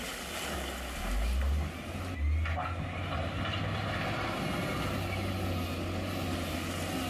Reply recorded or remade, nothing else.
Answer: recorded